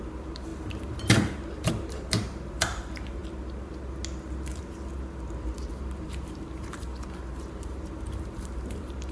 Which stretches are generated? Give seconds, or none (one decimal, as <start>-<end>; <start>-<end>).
0.0-3.2; 5.7-9.1